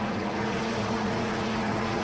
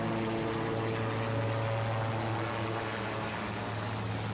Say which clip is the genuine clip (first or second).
second